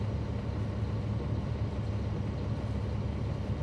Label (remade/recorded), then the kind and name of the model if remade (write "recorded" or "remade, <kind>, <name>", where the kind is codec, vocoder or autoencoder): recorded